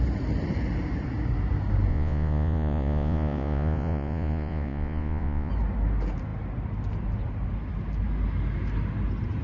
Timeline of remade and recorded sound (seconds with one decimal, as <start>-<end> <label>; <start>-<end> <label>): 0.0-1.9 recorded; 1.9-5.5 remade; 5.5-9.4 recorded